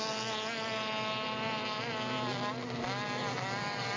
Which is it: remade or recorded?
recorded